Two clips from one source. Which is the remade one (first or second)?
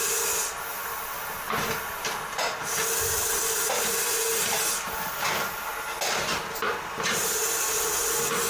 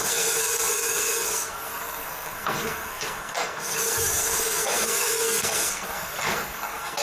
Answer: second